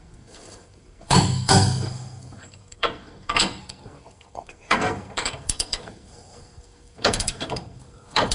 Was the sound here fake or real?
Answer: fake